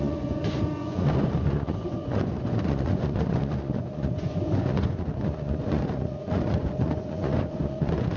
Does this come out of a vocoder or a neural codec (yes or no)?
yes